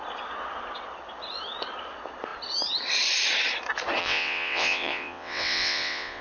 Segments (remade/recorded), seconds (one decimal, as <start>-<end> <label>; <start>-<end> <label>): 0.0-4.0 recorded; 4.0-6.2 remade